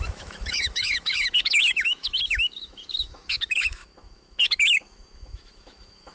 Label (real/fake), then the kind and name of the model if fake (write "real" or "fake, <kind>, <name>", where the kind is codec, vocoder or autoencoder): fake, autoencoder, DAC-VAE